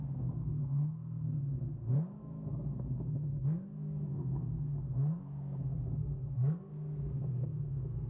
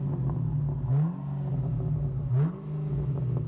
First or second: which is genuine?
second